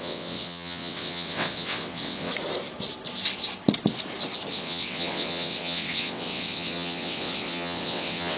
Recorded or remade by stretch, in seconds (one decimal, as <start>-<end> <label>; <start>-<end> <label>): 0.0-2.3 remade; 2.3-4.5 recorded; 4.5-8.4 remade